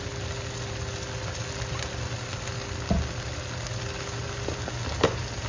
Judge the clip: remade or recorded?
recorded